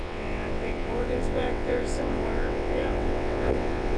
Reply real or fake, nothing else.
fake